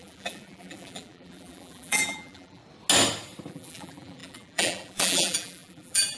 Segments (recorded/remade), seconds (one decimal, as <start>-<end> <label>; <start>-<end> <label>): 0.0-2.6 remade; 2.6-3.5 recorded; 3.5-6.2 remade